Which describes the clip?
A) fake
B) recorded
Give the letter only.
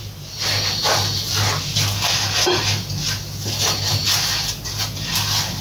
B